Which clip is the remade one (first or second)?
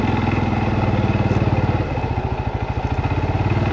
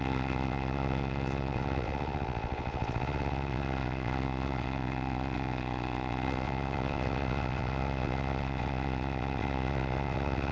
second